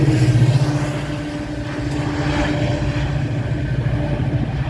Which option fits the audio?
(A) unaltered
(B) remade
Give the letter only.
A